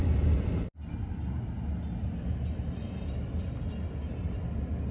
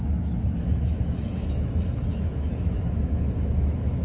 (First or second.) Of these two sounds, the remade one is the second